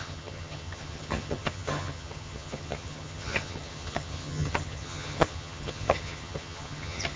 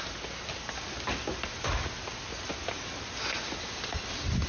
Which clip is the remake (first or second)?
first